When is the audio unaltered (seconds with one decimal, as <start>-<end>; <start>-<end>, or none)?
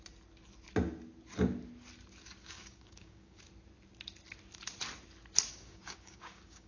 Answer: 0.0-2.4; 3.4-5.5